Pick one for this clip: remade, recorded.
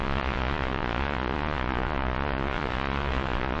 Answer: remade